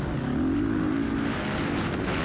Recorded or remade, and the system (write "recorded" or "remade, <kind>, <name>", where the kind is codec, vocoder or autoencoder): recorded